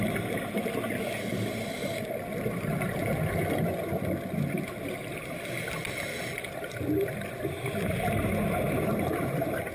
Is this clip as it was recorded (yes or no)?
yes